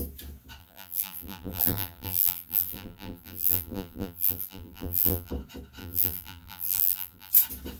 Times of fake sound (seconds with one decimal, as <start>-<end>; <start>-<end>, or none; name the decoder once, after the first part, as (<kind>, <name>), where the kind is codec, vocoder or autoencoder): 0.6-5.3 (vocoder, BigVGAN v2); 5.8-7.3